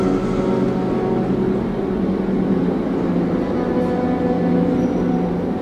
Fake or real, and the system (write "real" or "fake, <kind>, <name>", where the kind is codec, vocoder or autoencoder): real